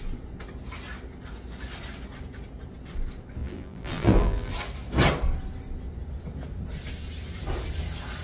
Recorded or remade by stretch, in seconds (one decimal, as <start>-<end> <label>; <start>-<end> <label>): 0.0-3.4 recorded; 3.4-4.5 remade; 4.5-8.2 recorded